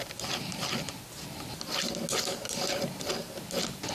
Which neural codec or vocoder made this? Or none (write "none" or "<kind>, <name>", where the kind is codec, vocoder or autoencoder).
none